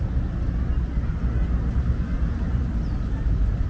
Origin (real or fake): real